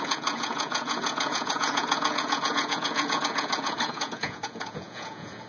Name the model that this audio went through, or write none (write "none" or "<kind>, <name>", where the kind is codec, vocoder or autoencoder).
vocoder, Vocos